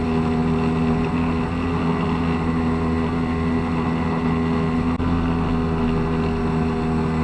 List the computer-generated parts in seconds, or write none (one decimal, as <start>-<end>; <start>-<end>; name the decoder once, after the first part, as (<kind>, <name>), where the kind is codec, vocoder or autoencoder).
none